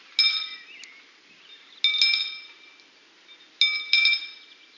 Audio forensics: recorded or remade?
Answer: recorded